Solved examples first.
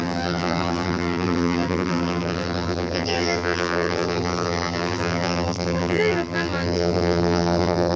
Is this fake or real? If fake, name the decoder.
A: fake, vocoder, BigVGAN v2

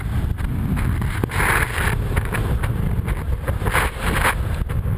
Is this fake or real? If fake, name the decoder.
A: real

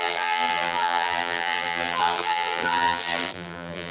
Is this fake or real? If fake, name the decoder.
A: fake, vocoder, BigVGAN v2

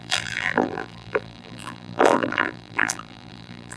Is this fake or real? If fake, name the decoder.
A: fake, vocoder, BigVGAN v2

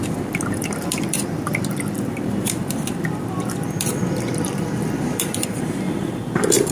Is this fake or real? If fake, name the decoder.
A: fake, vocoder, BigVGAN v2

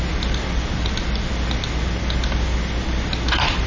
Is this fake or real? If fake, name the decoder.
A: real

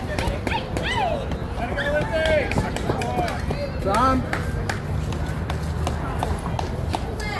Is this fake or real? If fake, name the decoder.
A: real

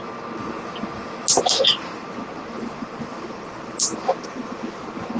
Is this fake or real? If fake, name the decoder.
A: real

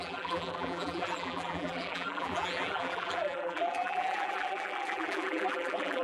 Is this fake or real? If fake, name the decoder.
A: fake, vocoder, BigVGAN v2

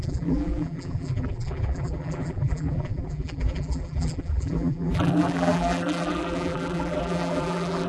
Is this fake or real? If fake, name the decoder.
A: fake, vocoder, BigVGAN v2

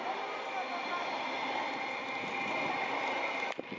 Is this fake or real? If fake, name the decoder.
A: real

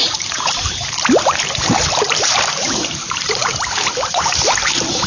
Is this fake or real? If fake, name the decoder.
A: fake, vocoder, BigVGAN v2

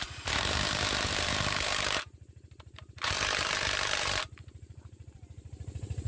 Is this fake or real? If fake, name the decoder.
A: fake, vocoder, BigVGAN v2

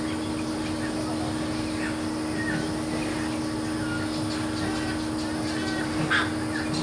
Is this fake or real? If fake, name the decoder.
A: real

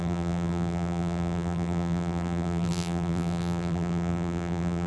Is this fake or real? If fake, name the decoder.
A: fake, vocoder, BigVGAN v2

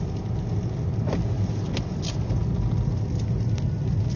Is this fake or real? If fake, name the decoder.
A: real